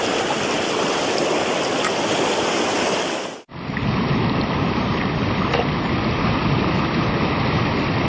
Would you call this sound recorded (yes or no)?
yes